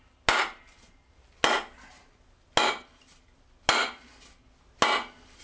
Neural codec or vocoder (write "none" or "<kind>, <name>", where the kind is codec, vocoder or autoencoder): none